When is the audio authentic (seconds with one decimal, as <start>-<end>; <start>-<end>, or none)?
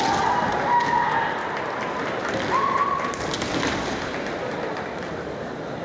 0.0-5.8